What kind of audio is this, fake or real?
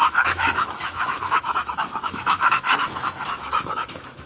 fake